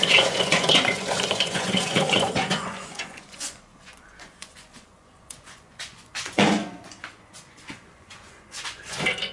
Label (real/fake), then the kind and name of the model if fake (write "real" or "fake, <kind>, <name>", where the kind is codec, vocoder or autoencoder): fake, vocoder, Vocos